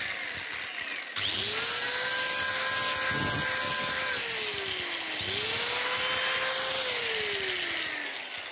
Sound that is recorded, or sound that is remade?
recorded